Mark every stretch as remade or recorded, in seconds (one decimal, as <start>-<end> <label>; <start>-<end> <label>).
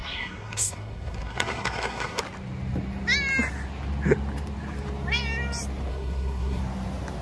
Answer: 0.0-2.2 remade; 2.2-5.9 recorded; 5.9-6.6 remade; 6.6-7.2 recorded